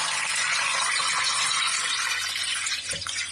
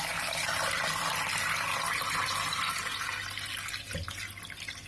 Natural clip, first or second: second